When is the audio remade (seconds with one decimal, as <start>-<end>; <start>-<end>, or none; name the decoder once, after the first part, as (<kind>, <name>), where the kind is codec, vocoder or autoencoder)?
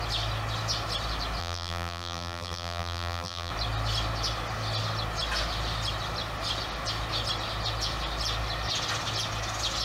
1.4-3.5 (vocoder, BigVGAN v2)